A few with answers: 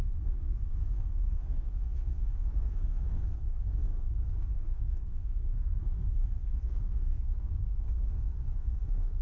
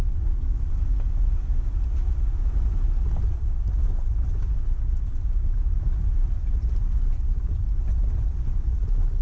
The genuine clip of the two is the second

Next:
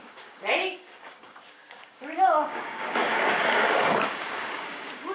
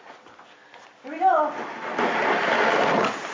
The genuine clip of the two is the second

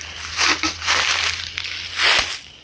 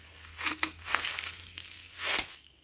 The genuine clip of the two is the first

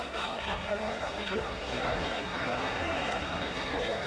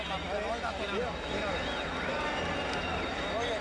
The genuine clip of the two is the second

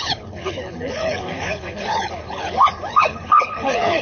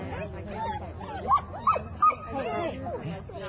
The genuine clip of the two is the second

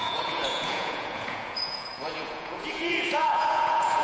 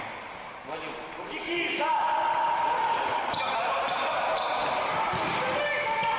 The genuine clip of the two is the second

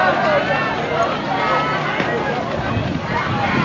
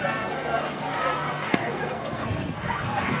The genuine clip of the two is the first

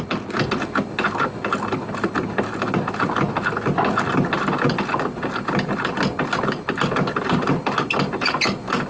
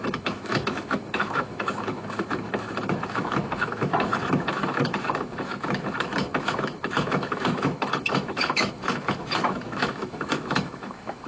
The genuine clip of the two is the first